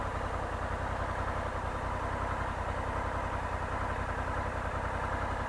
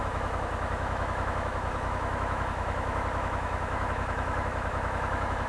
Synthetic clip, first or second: second